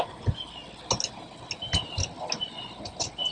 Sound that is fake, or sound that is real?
real